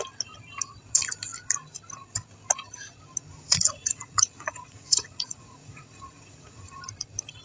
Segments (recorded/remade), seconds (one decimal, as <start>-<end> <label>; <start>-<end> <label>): 0.0-3.3 recorded; 3.3-6.8 remade; 6.8-7.4 recorded